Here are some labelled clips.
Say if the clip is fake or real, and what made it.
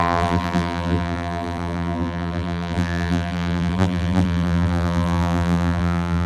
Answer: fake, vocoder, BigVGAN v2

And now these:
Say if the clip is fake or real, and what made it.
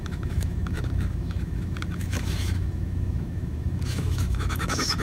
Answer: fake, autoencoder, DAC-VAE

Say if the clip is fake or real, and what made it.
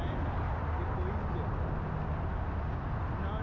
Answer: real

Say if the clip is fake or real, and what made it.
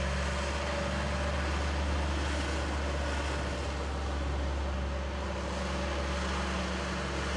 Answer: real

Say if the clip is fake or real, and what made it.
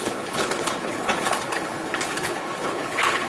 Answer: fake, codec, HILCodec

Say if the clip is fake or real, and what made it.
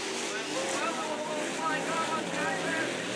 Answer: real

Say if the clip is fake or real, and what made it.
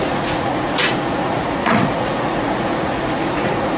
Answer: fake, vocoder, Vocos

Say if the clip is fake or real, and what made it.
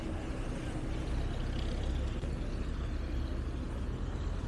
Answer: real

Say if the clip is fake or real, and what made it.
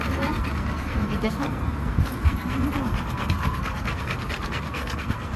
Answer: fake, codec, SNAC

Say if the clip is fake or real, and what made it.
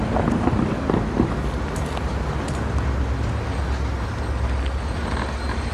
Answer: real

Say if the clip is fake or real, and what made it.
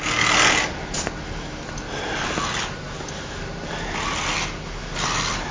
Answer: real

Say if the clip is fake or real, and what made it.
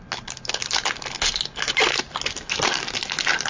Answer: real